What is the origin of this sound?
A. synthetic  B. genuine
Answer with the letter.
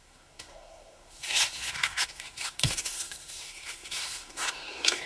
A